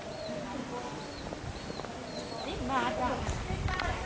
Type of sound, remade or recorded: recorded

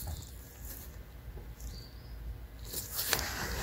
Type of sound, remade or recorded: recorded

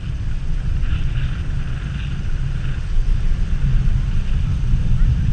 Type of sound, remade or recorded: remade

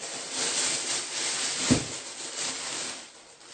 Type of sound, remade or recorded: recorded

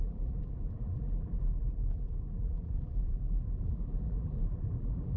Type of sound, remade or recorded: remade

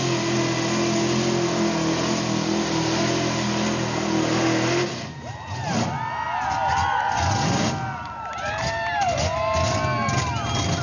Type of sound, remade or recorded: recorded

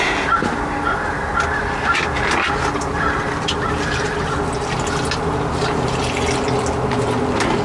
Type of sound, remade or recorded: recorded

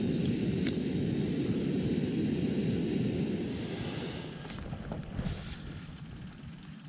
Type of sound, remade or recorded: recorded